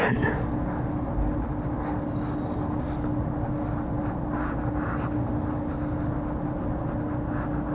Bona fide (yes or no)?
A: yes